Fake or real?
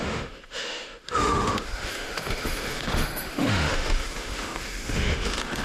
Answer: fake